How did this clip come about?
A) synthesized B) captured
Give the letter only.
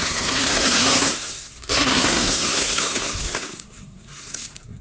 A